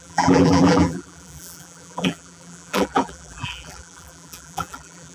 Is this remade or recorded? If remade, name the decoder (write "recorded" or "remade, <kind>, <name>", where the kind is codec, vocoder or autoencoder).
remade, vocoder, BigVGAN v2